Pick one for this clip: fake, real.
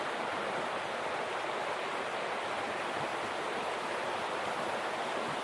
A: real